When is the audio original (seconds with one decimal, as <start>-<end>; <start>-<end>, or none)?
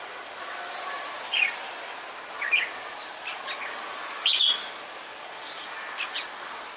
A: 0.0-6.8